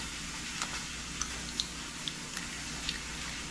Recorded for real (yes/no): yes